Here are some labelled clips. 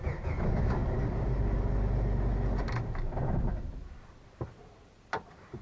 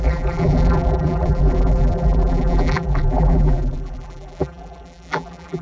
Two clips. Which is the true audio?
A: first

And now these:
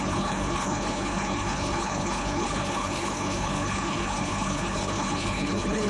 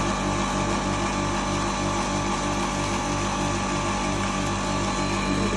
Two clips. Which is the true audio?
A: second